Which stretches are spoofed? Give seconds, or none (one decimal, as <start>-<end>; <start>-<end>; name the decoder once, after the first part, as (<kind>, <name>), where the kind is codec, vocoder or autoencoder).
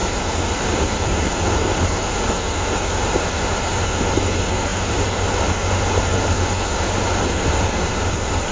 0.0-2.1 (vocoder, BigVGAN v2); 4.7-5.2